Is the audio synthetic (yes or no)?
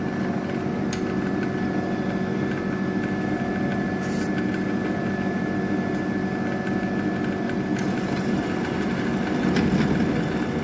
no